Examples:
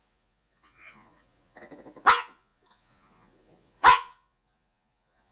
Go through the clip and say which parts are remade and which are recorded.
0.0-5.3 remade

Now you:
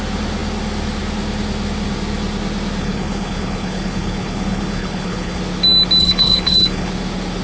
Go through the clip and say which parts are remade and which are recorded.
0.0-2.8 recorded; 2.8-5.4 remade; 5.4-6.0 recorded; 6.0-6.9 remade; 6.9-7.4 recorded